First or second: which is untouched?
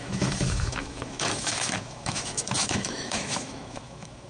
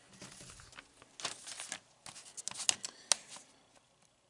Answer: second